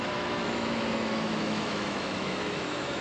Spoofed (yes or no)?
yes